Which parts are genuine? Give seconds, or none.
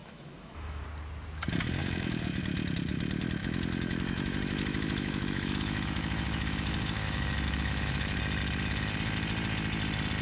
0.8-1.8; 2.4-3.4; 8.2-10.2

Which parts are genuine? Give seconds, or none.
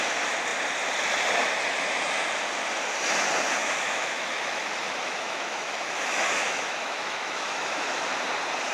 0.0-3.6; 8.1-8.7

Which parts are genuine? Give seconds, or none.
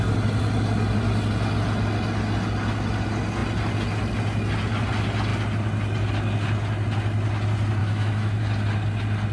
0.0-7.8; 8.4-9.3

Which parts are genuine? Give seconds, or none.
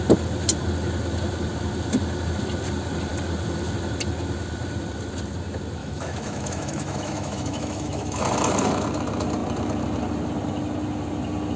0.0-5.8; 8.2-11.6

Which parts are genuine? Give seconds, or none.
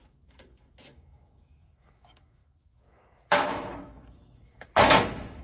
none